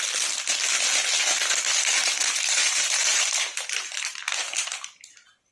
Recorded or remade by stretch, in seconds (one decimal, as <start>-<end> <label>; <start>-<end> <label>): 0.0-1.7 recorded; 1.7-4.2 remade; 4.2-5.5 recorded